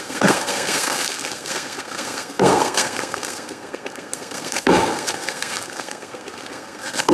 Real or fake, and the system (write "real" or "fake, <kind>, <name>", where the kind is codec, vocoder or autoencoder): fake, codec, SNAC